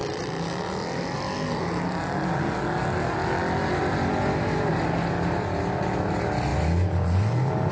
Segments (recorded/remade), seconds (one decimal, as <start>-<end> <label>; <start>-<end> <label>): 0.0-7.7 recorded